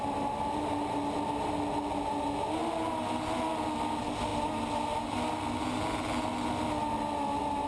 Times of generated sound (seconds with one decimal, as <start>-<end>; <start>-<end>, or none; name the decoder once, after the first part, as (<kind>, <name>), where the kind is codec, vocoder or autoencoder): none